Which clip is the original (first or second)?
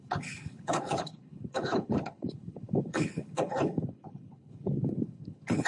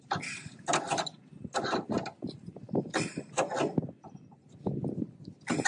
second